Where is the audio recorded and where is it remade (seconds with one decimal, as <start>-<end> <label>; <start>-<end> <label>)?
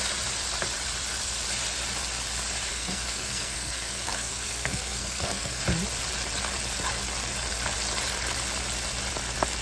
0.0-2.7 recorded; 2.7-5.6 remade; 5.6-9.6 recorded